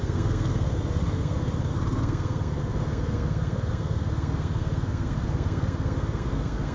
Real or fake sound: fake